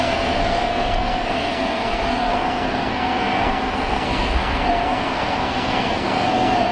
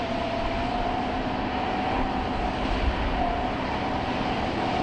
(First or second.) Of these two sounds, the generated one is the first